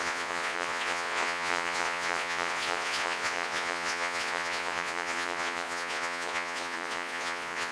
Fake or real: fake